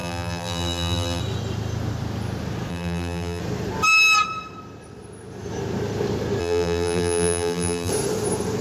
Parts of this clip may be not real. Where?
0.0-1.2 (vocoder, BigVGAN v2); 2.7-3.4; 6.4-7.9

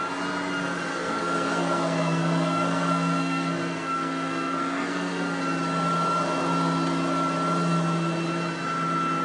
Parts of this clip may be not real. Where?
0.9-5.4 (codec, SNAC)

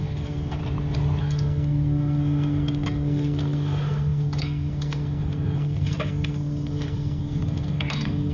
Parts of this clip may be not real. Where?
0.0-0.6 (codec, SNAC); 1.2-8.3